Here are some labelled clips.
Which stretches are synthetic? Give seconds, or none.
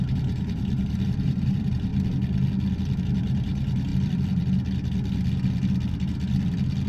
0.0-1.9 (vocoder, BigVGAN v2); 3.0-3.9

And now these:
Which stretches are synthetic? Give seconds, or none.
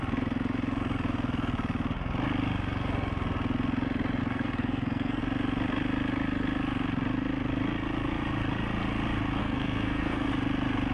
4.2-5.2 (codec, SNAC); 9.4-10.3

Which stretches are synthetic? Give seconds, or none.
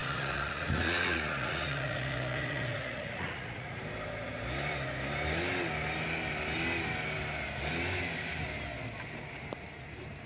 0.0-3.8 (vocoder, Vocos)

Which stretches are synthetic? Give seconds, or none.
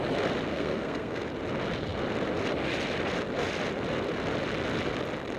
0.5-1.2 (codec, SNAC)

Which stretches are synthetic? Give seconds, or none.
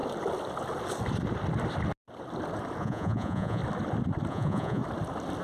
2.8-3.6 (vocoder, Vocos); 4.3-4.8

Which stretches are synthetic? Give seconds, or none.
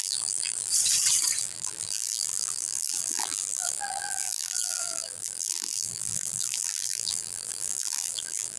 0.0-0.7 (vocoder, BigVGAN v2); 1.4-8.6